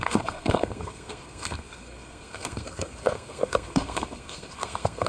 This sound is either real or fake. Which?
fake